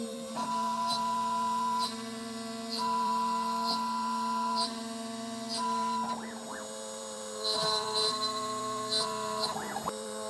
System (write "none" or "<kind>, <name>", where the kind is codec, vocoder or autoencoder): vocoder, BigVGAN v2